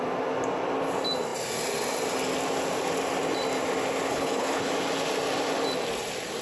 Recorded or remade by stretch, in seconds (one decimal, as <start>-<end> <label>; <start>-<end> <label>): 0.0-4.1 recorded; 4.1-4.7 remade; 4.7-6.4 recorded